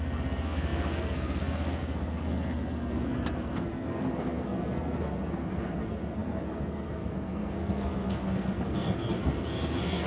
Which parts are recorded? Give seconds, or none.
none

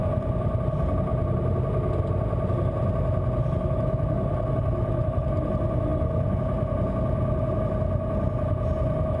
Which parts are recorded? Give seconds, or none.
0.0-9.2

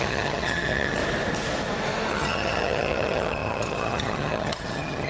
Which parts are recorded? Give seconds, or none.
1.0-2.1

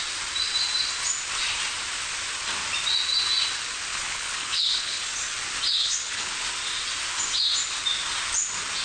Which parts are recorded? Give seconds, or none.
0.0-3.9; 5.0-5.8; 6.3-8.8

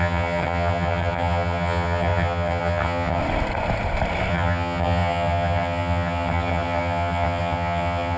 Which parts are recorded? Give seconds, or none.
3.2-4.3

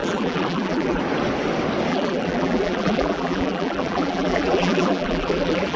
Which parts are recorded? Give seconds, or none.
1.0-1.9